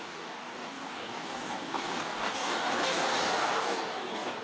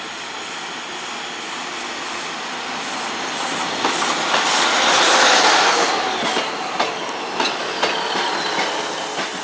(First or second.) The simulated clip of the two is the first